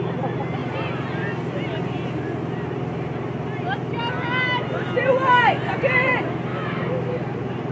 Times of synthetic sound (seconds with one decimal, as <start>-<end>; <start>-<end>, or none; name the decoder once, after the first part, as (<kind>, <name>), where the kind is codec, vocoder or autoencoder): 6.5-7.1 (autoencoder, DAC-VAE)